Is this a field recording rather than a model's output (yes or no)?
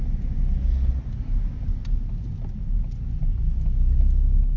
yes